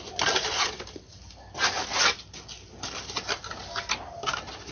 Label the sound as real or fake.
real